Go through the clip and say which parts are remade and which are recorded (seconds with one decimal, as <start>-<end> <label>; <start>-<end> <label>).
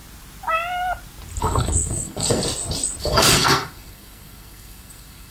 0.0-1.4 recorded; 1.4-2.4 remade; 2.4-3.0 recorded; 3.0-5.3 remade